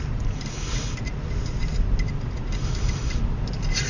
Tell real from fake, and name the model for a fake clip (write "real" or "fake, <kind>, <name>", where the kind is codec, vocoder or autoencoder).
real